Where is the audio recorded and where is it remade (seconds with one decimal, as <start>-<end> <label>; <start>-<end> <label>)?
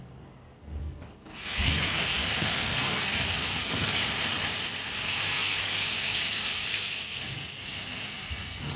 0.0-4.0 remade; 4.0-4.9 recorded; 4.9-8.8 remade